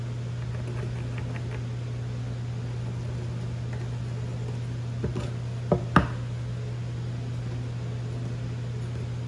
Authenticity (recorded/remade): recorded